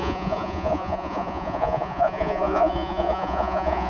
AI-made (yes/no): yes